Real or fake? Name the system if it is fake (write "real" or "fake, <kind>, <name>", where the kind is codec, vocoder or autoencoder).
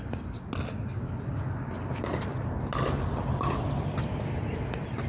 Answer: real